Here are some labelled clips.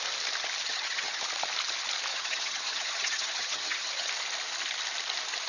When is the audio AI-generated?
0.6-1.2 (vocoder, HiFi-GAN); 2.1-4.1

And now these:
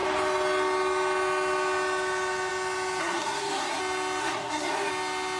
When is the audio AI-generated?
3.0-3.8 (codec, SNAC); 4.2-4.9